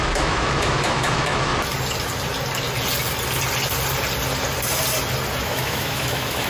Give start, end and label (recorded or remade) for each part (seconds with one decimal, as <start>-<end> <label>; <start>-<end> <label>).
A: 0.0-1.5 remade; 1.5-5.4 recorded; 5.4-6.5 remade